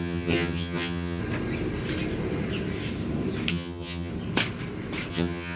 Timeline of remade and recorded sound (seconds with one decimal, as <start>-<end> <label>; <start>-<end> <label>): 0.0-1.2 remade; 1.2-3.5 recorded; 3.5-4.1 remade; 4.1-5.1 recorded; 5.1-5.6 remade